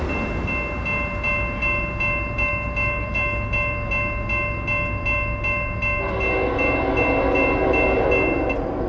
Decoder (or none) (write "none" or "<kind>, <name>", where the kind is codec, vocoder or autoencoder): none